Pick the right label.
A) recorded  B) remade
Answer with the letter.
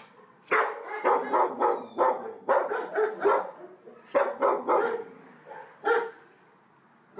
A